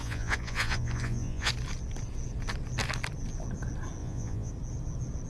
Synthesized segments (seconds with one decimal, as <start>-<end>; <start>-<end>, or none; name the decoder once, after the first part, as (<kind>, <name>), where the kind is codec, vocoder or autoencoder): 0.0-1.5 (vocoder, Vocos); 4.0-4.5